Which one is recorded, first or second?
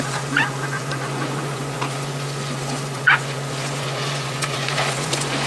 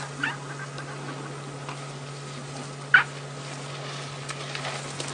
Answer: second